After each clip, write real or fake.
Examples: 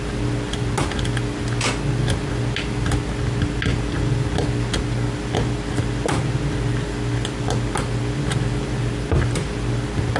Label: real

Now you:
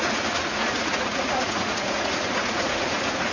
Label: fake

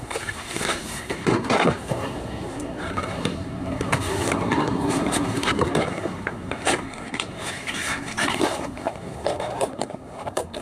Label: fake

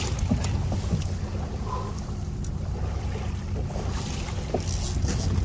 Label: real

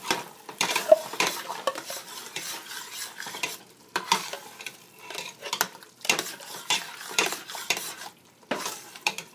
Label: fake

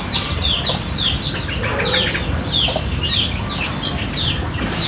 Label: real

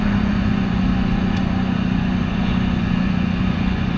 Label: fake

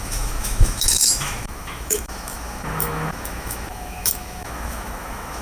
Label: fake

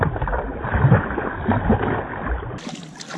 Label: real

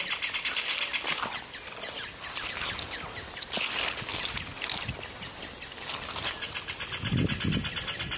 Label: real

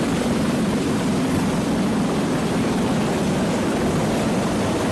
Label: real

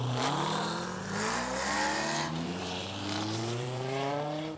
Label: fake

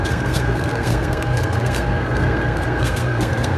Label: fake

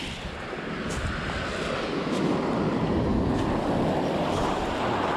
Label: real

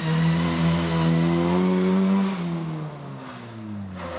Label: real